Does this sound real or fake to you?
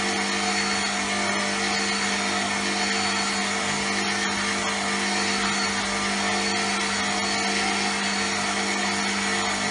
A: real